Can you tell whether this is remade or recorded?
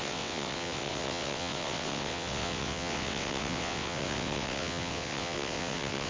remade